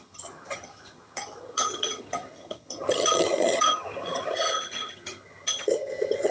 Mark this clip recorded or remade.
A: remade